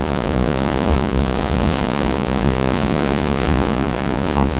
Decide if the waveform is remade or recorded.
remade